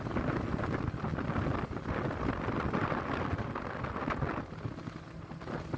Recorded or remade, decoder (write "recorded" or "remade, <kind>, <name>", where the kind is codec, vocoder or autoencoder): recorded